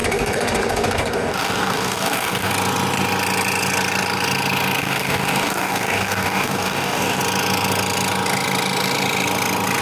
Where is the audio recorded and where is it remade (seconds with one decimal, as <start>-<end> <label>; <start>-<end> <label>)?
0.0-2.5 remade; 2.5-4.8 recorded; 4.8-7.2 remade; 7.2-9.8 recorded

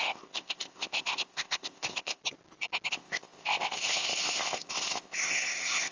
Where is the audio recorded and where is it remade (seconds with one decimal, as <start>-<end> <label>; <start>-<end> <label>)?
0.0-2.2 remade; 2.2-2.9 recorded; 2.9-5.9 remade

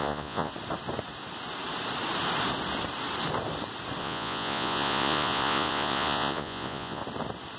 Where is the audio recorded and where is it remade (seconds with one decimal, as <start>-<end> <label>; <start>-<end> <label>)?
0.0-0.5 remade; 0.5-4.0 recorded; 4.0-7.0 remade; 7.0-7.6 recorded

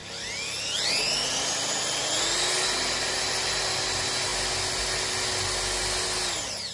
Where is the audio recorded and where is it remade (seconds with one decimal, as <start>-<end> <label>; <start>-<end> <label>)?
0.0-6.7 recorded

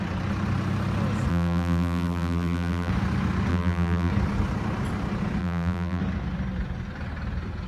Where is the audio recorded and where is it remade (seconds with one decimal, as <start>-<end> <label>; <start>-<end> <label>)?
0.0-1.3 recorded; 1.3-2.9 remade; 2.9-3.5 recorded; 3.5-4.1 remade; 4.1-5.4 recorded; 5.4-6.0 remade; 6.0-7.7 recorded